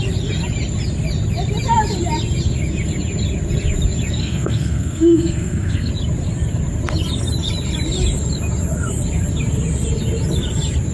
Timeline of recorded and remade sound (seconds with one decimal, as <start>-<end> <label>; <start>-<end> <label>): 0.0-4.2 recorded; 4.2-5.9 remade; 5.9-10.9 recorded